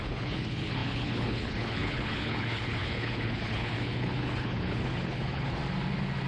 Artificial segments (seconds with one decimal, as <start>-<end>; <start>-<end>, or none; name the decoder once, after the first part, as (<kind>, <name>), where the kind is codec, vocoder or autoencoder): 0.0-5.6 (codec, HILCodec)